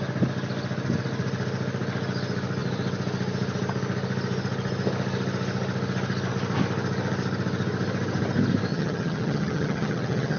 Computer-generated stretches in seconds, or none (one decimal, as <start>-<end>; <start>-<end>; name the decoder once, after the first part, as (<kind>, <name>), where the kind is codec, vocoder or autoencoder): 8.7-10.4 (vocoder, HiFi-GAN)